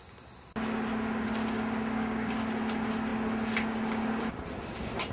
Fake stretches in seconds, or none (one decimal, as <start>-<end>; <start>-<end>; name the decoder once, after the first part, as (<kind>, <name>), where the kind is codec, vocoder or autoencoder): 1.8-2.4 (codec, DAC)